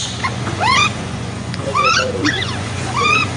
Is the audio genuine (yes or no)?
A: no